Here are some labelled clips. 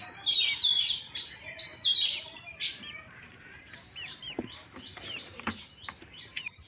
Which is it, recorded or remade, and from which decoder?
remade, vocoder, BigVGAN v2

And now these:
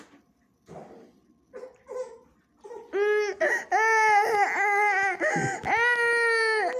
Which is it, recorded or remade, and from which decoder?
recorded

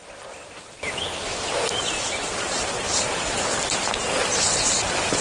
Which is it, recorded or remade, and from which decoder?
recorded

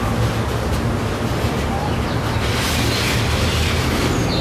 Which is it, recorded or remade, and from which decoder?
recorded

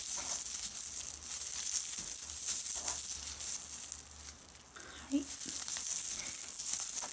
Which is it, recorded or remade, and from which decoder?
recorded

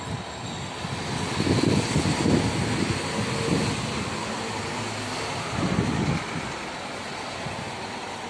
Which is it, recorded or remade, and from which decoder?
recorded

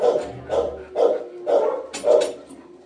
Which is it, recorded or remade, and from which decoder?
recorded